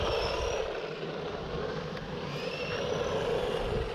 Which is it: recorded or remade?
recorded